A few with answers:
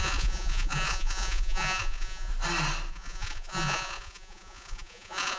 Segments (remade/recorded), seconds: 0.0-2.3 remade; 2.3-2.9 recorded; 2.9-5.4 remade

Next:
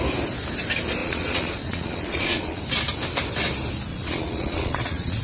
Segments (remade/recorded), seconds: 0.0-1.0 recorded; 1.0-2.6 remade; 2.6-3.9 recorded; 3.9-5.2 remade

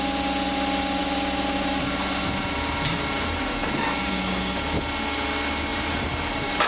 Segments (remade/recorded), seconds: 0.0-1.0 recorded; 1.0-4.1 remade; 4.1-5.7 recorded; 5.7-6.7 remade

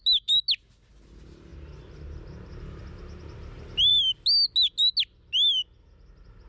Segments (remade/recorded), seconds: 0.0-6.5 recorded

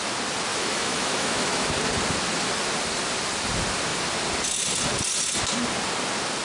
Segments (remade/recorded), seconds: 0.0-0.5 recorded; 0.5-1.7 remade; 1.7-6.4 recorded

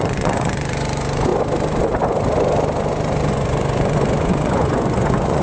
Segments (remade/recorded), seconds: 0.0-1.3 remade; 1.3-3.3 recorded; 3.3-5.4 remade

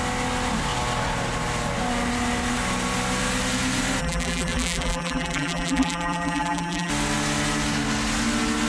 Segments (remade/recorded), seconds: 0.0-4.0 recorded; 4.0-6.9 remade; 6.9-8.7 recorded

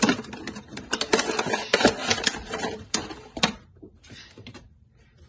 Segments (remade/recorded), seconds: 0.0-2.0 remade; 2.0-2.5 recorded; 2.5-5.3 remade